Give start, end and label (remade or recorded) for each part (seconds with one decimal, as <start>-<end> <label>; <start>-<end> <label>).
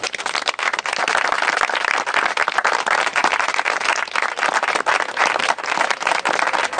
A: 0.0-6.8 recorded